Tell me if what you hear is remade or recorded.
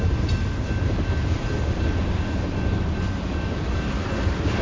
recorded